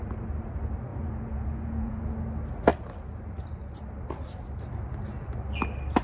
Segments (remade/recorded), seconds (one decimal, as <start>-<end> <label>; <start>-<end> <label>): 0.0-0.9 recorded; 0.9-2.0 remade; 2.0-6.0 recorded